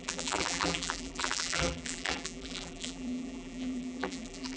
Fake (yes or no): yes